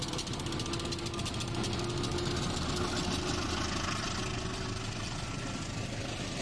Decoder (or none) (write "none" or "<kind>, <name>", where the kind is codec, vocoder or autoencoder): none